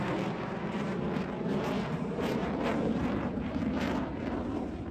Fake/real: fake